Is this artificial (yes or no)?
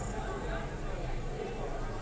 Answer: no